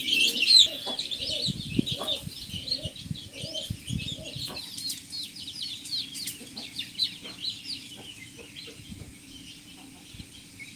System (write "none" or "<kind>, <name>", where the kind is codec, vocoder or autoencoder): none